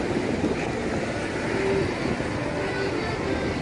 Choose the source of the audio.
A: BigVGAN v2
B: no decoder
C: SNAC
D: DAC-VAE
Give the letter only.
B